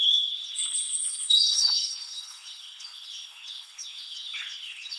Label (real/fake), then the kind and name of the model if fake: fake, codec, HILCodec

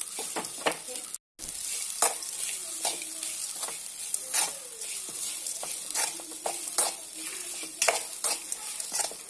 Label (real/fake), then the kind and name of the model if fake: real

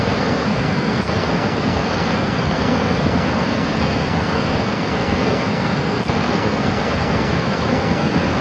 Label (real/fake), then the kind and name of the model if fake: fake, codec, SNAC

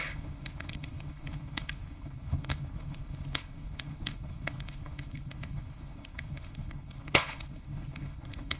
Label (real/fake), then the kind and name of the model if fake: fake, codec, HILCodec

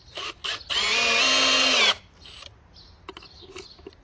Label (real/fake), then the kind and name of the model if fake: real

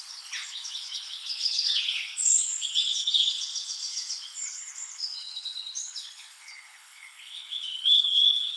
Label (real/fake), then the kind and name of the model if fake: fake, codec, HILCodec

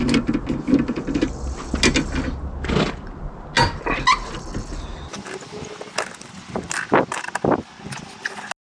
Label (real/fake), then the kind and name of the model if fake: real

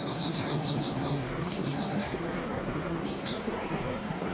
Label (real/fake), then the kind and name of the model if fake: fake, codec, SNAC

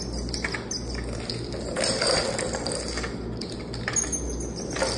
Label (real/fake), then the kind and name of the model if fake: real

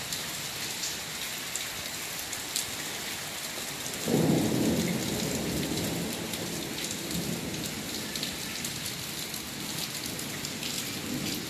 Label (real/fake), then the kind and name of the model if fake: real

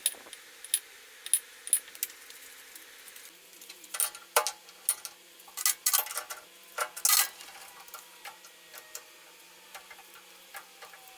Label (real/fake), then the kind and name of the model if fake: real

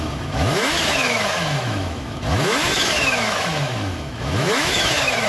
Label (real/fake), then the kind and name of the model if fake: fake, autoencoder, DAC-VAE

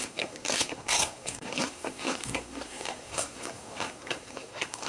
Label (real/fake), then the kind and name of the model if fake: fake, codec, SNAC